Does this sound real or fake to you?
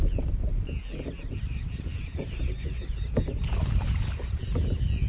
real